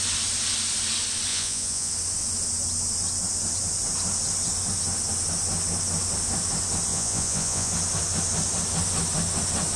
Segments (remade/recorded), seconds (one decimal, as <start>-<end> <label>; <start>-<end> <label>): 0.0-1.3 recorded; 1.3-1.9 remade; 1.9-6.9 recorded; 6.9-7.7 remade; 7.7-9.8 recorded